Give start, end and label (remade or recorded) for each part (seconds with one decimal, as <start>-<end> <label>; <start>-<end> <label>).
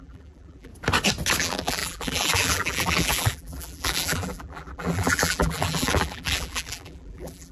0.0-0.7 remade; 0.7-1.4 recorded; 1.4-7.5 remade